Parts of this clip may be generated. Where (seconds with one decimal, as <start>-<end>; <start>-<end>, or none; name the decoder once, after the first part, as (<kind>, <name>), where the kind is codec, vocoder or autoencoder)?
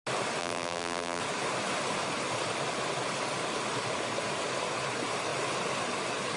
0.4-1.2 (vocoder, BigVGAN v2)